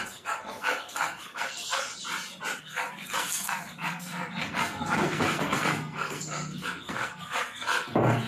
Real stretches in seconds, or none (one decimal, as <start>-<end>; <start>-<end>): 1.9-2.6